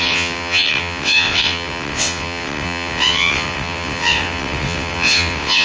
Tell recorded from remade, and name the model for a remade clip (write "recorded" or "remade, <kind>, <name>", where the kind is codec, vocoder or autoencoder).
remade, vocoder, WaveNeXt